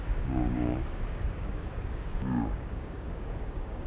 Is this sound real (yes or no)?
no